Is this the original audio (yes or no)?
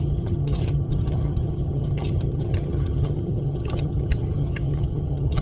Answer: no